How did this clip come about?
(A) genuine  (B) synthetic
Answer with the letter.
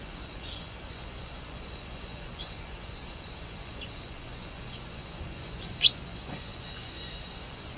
B